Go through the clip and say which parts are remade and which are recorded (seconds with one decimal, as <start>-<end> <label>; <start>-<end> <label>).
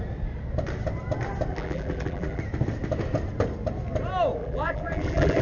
0.0-1.5 recorded; 1.5-2.4 remade; 2.4-4.4 recorded; 4.4-5.4 remade